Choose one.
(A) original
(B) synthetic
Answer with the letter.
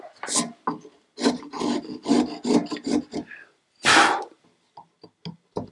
A